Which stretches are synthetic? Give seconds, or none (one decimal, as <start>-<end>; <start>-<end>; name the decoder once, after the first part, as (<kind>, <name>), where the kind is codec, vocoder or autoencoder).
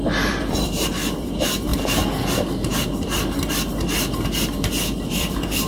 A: 0.0-1.7 (vocoder, BigVGAN v2); 5.1-5.7